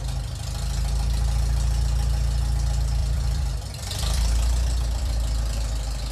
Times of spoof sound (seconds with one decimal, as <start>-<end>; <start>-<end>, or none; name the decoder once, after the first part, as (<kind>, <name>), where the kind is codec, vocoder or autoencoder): 3.0-5.4 (vocoder, BigVGAN v2)